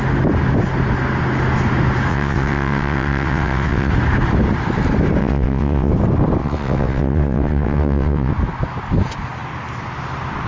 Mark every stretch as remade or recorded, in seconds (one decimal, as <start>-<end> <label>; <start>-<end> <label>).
0.0-2.1 recorded; 2.1-3.9 remade; 3.9-5.2 recorded; 5.2-5.9 remade; 5.9-6.4 recorded; 6.4-8.3 remade; 8.3-10.5 recorded